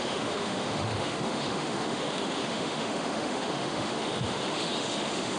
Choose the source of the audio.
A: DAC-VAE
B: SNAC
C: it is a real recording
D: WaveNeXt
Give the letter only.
A